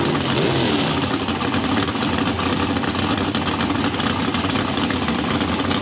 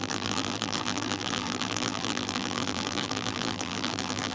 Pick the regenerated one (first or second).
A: second